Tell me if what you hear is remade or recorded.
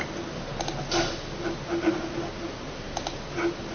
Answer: recorded